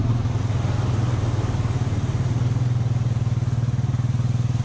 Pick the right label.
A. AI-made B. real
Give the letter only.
B